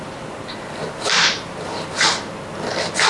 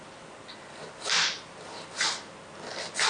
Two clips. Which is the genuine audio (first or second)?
second